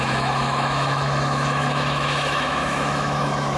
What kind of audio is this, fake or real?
fake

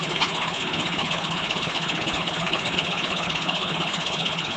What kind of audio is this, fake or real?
fake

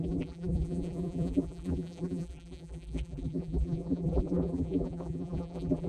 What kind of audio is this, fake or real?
fake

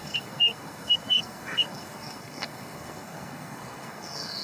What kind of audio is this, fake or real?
fake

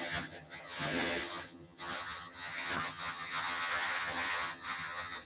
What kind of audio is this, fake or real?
fake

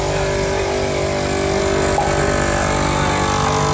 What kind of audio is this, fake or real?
real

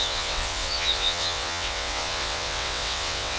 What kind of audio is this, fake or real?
fake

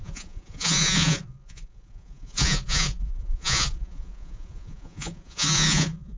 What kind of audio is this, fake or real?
fake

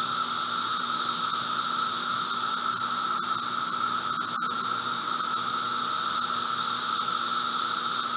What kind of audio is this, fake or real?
real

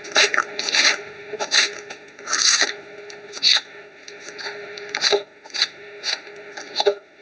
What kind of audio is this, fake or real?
fake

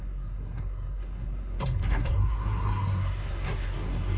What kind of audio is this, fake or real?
fake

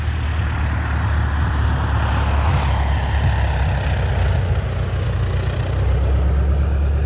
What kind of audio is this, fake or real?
real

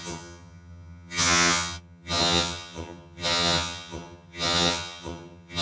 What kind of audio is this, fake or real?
fake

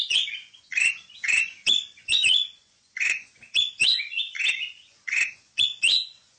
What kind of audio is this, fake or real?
fake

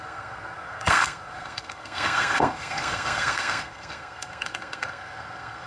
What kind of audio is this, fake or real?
fake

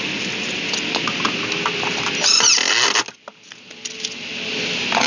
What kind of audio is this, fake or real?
real